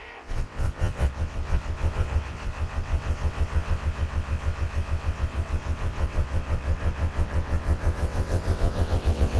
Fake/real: fake